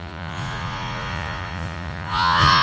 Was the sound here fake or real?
fake